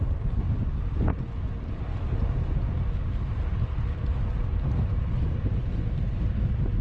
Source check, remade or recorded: recorded